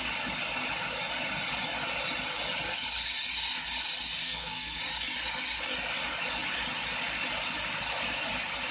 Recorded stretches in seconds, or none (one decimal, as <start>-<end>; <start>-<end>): 0.0-4.2; 4.8-8.7